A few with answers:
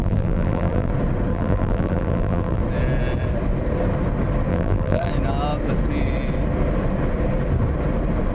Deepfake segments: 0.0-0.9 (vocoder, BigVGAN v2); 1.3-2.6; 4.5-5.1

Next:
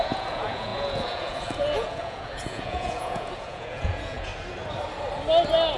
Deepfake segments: 0.0-4.3 (vocoder, Vocos)

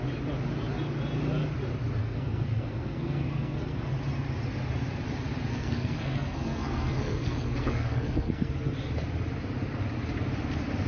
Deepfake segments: 2.0-3.9 (codec, SNAC); 5.5-8.5

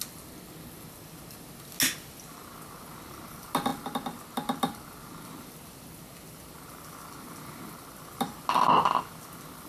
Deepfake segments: none